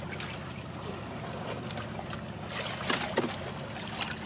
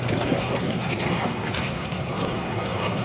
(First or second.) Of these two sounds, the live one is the first